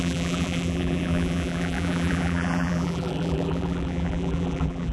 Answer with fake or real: fake